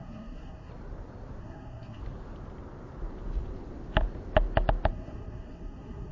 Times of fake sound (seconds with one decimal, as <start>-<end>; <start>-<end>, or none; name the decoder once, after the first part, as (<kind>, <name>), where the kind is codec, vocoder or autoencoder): 0.0-0.7 (codec, SNAC); 1.4-2.0; 4.9-6.1

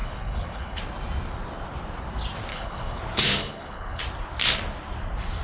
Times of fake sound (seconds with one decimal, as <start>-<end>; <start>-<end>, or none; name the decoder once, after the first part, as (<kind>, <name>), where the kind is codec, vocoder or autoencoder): 0.0-0.8 (codec, HILCodec); 2.5-3.0; 3.4-4.0

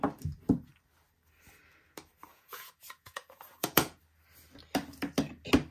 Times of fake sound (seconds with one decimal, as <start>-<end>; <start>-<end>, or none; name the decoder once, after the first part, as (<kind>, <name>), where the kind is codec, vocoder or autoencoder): 2.3-4.0 (vocoder, Vocos)

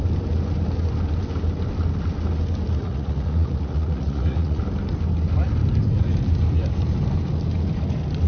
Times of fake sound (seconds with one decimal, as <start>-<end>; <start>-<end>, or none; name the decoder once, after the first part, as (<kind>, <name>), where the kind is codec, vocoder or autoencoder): 2.8-4.6 (vocoder, Vocos)